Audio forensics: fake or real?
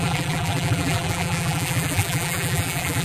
fake